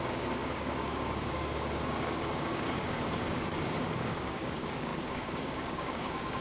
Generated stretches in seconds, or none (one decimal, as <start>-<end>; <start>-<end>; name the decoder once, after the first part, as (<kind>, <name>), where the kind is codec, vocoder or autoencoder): 0.0-6.4 (codec, DAC)